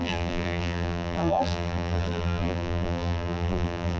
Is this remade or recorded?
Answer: remade